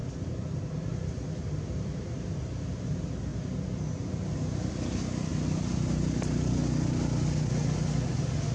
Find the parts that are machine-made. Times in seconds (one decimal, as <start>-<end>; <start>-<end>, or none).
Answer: 0.0-3.3; 4.7-5.3